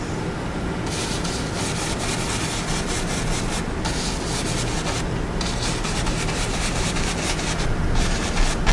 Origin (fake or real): real